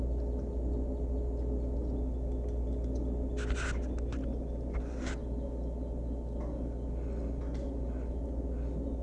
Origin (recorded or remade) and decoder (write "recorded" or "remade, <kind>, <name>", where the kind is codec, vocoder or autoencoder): recorded